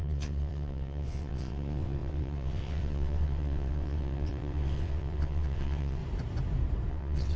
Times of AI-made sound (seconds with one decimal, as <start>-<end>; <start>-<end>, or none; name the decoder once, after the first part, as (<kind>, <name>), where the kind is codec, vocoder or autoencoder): 0.0-6.0 (vocoder, WaveNeXt); 6.9-7.4